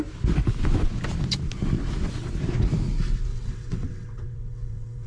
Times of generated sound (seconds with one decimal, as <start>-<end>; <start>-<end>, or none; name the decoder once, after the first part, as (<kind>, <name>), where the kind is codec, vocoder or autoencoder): 3.3-5.1 (vocoder, WaveNeXt)